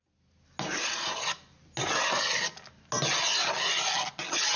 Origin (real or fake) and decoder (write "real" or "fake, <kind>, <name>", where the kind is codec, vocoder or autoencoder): real